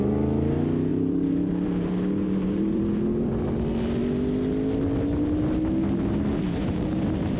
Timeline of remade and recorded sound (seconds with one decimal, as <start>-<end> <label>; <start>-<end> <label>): 0.0-0.9 recorded; 0.9-3.3 remade; 3.3-7.4 recorded